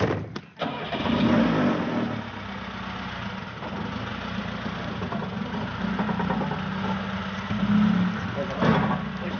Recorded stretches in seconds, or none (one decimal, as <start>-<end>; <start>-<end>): 0.0-9.4